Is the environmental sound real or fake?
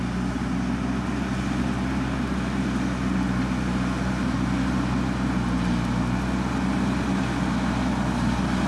real